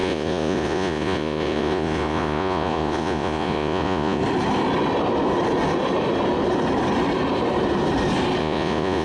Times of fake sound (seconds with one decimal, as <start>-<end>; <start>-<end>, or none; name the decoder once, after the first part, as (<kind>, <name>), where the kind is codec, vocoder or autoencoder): 0.0-4.2 (vocoder, Vocos); 8.4-9.0